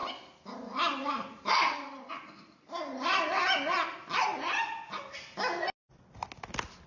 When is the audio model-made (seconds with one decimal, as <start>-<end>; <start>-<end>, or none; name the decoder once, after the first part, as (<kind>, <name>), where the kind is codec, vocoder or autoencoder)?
none